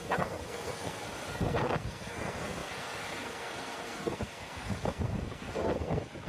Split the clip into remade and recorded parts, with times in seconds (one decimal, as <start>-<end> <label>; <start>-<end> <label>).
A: 0.0-6.3 remade